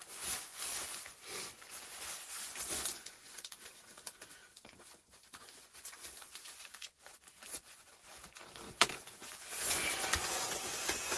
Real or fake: fake